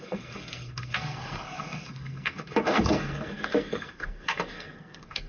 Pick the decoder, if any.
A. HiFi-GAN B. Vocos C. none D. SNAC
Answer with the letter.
D